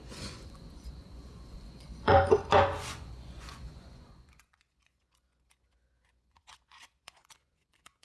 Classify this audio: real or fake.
fake